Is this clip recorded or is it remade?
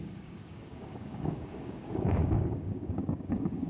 remade